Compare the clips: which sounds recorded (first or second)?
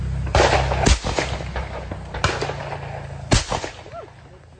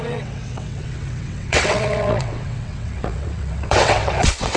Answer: first